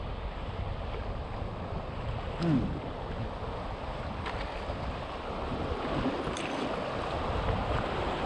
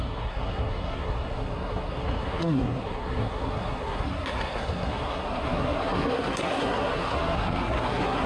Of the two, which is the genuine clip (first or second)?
first